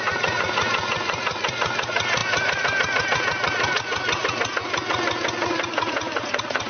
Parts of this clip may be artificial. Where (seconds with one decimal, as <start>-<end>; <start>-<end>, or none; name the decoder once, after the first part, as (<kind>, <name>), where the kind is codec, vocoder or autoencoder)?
0.0-6.7 (vocoder, Vocos)